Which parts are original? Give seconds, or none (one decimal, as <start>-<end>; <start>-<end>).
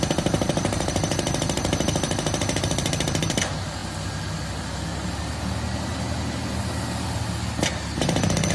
0.0-8.5